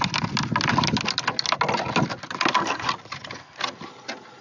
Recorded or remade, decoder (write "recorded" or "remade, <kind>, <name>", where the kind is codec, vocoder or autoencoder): recorded